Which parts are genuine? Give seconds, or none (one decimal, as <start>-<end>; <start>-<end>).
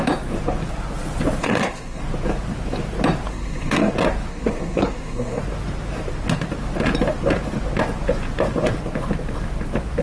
0.0-1.4; 2.0-3.3; 3.9-4.3; 5.4-10.0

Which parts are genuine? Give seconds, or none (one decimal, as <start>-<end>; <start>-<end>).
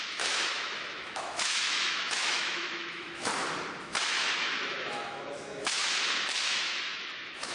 3.3-3.8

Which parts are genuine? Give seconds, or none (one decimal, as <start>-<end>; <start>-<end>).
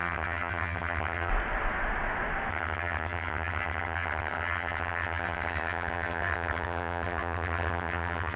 1.3-2.5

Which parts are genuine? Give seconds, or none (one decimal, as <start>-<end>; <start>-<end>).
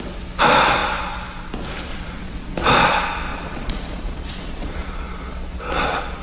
0.0-1.9; 2.7-3.3; 5.1-6.2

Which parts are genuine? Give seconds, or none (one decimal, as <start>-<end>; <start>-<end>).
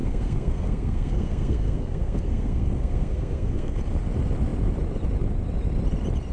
3.8-6.3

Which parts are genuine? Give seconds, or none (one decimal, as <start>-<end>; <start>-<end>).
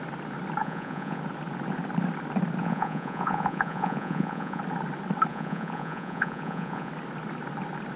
0.0-0.6; 1.2-2.6; 4.6-5.3; 6.9-8.0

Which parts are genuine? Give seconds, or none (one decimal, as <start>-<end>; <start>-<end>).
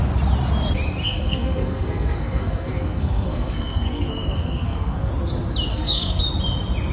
0.0-1.0; 5.1-5.7; 6.2-6.9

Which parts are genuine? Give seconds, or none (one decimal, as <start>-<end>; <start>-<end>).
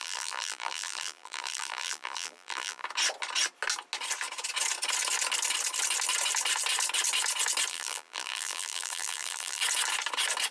2.8-7.7; 9.6-10.5